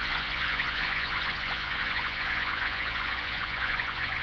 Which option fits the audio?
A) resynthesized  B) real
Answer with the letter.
A